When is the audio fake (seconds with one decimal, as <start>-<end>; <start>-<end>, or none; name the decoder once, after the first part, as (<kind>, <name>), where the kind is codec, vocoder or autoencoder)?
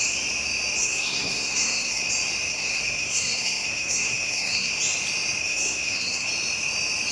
0.8-2.1 (codec, SNAC); 2.5-4.8; 5.4-6.3